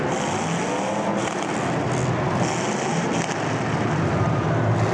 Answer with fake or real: real